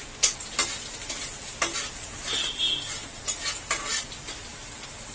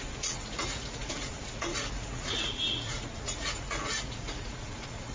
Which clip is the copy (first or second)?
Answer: second